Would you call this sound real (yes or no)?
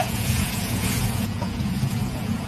no